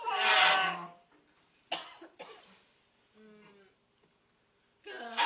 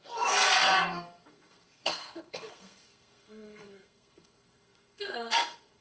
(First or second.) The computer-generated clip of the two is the second